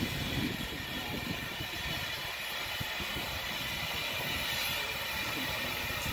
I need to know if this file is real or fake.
fake